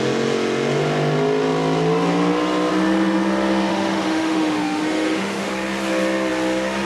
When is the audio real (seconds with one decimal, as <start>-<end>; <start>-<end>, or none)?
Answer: 0.0-3.7; 5.5-6.9